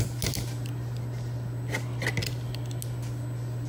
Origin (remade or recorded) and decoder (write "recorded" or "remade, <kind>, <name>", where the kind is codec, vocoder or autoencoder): recorded